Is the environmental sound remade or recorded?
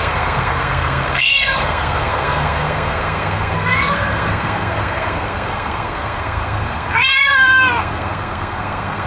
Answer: remade